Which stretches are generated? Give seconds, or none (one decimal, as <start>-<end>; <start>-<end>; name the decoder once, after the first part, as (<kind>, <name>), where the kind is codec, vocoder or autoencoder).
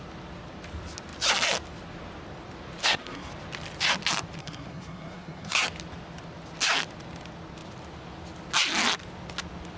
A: 2.8-3.3 (codec, SNAC); 4.4-5.6